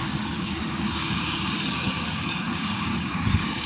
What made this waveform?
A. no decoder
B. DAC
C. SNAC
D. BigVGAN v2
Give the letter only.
B